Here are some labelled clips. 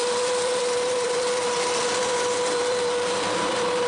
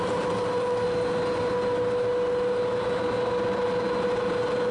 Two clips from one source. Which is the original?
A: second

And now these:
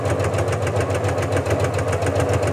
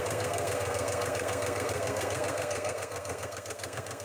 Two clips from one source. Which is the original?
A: first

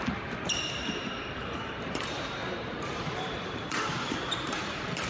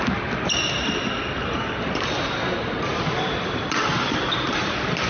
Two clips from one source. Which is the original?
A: second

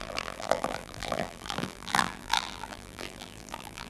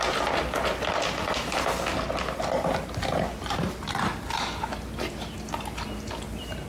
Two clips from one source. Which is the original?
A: second